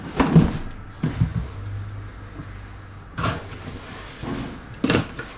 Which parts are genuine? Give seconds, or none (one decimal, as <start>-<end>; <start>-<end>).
0.0-5.4